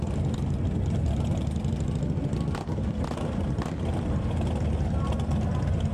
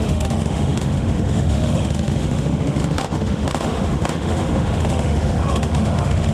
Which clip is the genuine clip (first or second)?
first